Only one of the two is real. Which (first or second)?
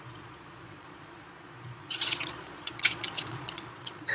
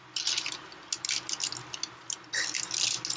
second